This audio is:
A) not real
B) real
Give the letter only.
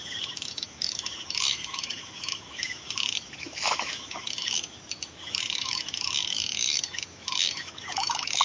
A